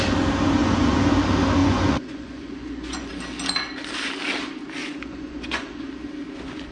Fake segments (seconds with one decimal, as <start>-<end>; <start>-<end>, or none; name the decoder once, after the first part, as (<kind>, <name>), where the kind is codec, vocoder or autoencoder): 0.6-1.1 (vocoder, Vocos); 1.6-3.1; 4.8-5.9